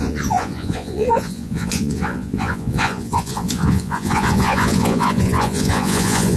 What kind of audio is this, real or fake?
fake